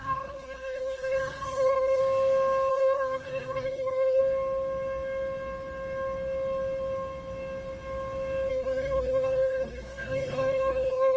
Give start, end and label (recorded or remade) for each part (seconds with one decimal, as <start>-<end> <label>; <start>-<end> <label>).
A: 0.0-2.0 remade; 2.0-2.7 recorded; 2.7-4.2 remade; 4.2-8.5 recorded; 8.5-11.2 remade